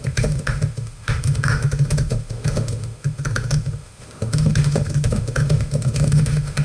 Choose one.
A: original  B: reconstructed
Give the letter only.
B